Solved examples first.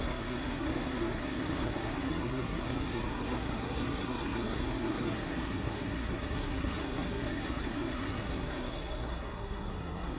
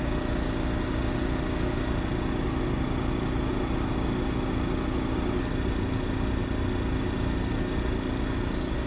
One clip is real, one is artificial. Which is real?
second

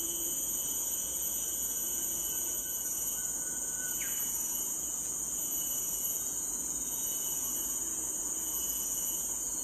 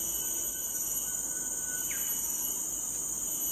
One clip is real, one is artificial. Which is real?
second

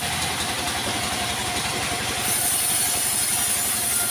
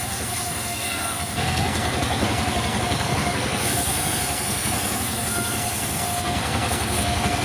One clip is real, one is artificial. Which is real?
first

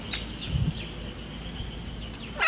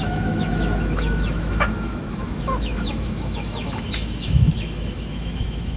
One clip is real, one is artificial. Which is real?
first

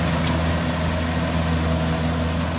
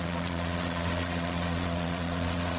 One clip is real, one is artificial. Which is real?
first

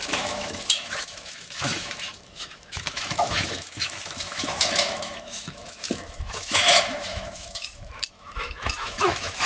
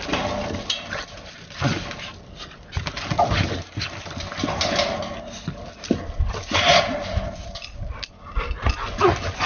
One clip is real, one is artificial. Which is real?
second